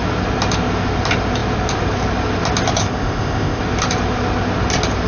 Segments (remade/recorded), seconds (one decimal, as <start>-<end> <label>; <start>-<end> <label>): 0.0-2.8 recorded; 2.8-3.6 remade; 3.6-5.1 recorded